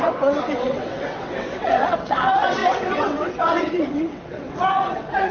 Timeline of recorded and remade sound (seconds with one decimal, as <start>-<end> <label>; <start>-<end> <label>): 0.0-5.3 remade